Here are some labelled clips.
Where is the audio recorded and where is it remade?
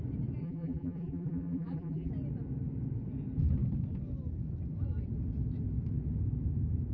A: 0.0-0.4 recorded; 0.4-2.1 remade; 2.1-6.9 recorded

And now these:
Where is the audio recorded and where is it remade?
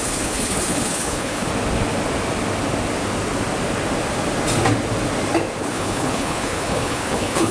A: 0.0-1.5 remade; 1.5-5.6 recorded; 5.6-7.5 remade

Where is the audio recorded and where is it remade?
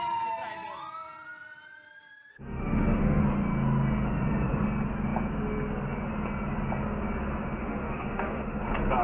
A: 0.0-2.3 recorded; 2.3-3.2 remade; 3.2-7.6 recorded; 7.6-8.6 remade; 8.6-9.0 recorded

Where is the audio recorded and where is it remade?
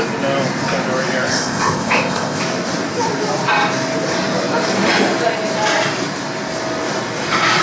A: 0.0-1.3 recorded; 1.3-2.4 remade; 2.4-7.6 recorded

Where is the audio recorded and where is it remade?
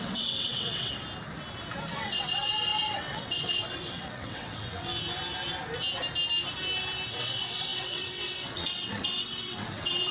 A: 0.0-0.9 remade; 0.9-1.9 recorded; 1.9-4.9 remade; 4.9-7.1 recorded; 7.1-10.1 remade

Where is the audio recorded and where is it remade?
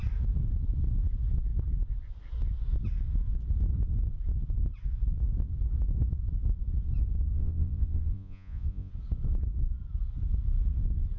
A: 0.0-7.3 recorded; 7.3-8.9 remade; 8.9-11.2 recorded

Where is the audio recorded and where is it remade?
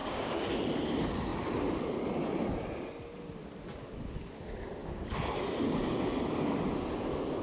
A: 0.0-0.6 remade; 0.6-4.8 recorded; 4.8-5.4 remade; 5.4-7.4 recorded